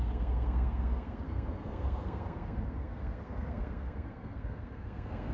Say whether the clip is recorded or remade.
remade